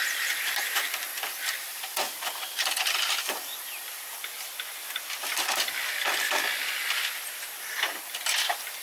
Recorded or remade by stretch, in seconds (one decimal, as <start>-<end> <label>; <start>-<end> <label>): 0.0-3.5 remade; 3.5-8.0 recorded; 8.0-8.8 remade